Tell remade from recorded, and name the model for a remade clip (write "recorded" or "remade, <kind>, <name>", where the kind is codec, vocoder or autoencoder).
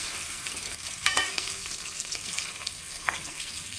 remade, codec, SNAC